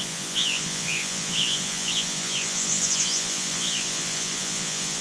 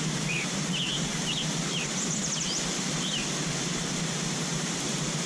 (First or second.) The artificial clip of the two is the first